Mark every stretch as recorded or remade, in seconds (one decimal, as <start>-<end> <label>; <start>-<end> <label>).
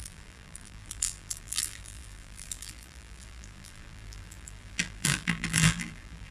0.0-6.3 remade